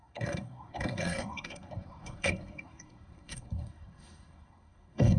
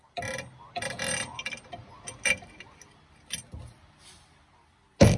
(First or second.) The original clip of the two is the second